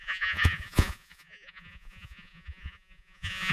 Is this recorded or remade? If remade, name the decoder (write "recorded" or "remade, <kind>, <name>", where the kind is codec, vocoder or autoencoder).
remade, vocoder, Vocos